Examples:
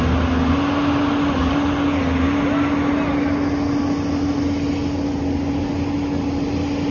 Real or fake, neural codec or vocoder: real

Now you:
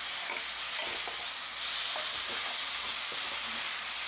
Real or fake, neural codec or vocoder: real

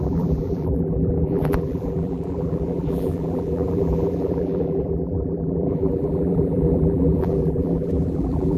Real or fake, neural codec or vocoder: fake, vocoder, BigVGAN v2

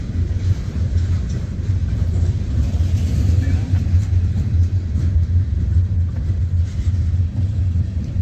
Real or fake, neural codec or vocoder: fake, vocoder, BigVGAN v2